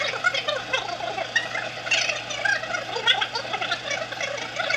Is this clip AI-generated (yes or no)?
no